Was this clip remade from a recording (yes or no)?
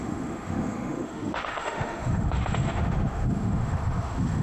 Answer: yes